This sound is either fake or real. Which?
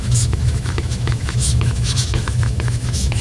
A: fake